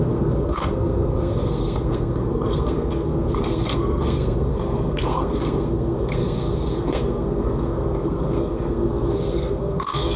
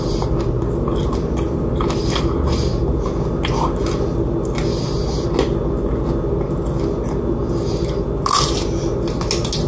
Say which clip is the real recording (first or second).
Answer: second